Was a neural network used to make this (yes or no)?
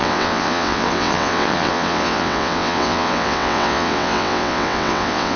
yes